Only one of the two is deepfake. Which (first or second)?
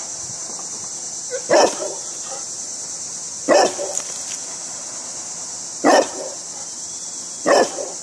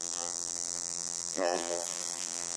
second